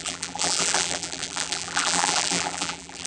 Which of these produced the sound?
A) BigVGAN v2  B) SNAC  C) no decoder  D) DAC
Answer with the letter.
A